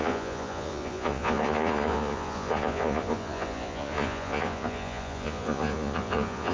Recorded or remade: remade